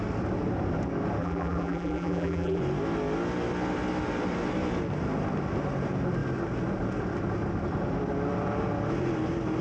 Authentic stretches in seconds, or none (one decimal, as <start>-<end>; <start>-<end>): 0.0-1.2; 2.6-9.6

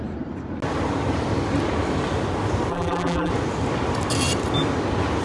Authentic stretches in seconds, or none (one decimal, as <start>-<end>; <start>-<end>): 0.0-2.7; 3.3-5.2

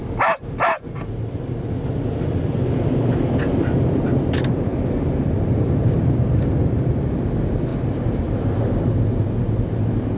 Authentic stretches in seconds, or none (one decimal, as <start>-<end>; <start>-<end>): 0.0-4.7; 5.7-7.7; 8.2-10.2

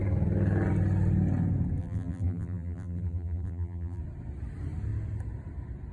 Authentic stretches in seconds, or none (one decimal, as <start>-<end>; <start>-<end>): 0.0-1.8; 4.0-5.9

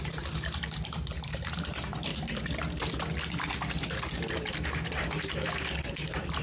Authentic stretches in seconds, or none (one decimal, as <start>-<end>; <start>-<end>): 2.1-5.9